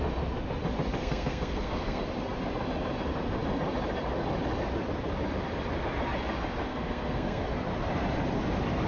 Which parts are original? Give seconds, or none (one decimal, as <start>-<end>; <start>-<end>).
0.0-1.0; 2.0-6.6; 7.4-8.9